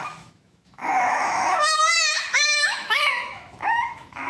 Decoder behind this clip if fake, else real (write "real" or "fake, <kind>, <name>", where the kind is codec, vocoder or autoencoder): fake, autoencoder, DAC-VAE